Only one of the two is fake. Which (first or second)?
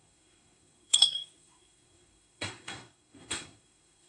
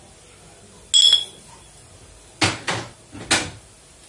first